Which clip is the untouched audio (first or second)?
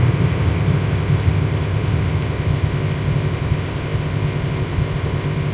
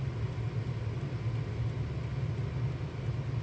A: second